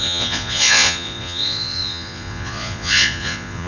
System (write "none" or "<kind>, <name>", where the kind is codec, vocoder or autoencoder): vocoder, Vocos